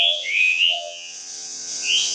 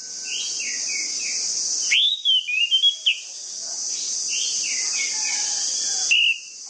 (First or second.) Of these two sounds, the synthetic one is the first